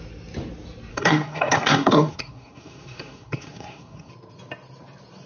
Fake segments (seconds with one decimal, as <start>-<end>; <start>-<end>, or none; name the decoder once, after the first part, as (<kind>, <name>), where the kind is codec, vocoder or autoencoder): 0.9-4.1 (codec, SNAC)